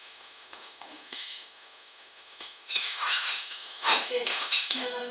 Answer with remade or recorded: remade